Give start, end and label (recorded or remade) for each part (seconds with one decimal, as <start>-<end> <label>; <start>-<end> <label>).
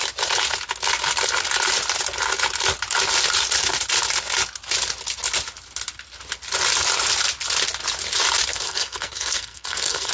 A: 0.0-8.5 recorded; 8.5-10.1 remade